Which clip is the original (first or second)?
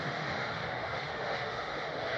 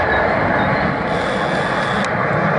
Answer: second